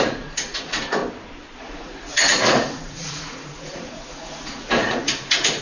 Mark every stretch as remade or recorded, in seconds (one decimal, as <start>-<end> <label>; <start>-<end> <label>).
0.0-1.0 remade; 1.0-1.6 recorded; 1.6-5.6 remade